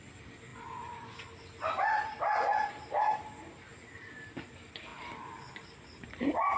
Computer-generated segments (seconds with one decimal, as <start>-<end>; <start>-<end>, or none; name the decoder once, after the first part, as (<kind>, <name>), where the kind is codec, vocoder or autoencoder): none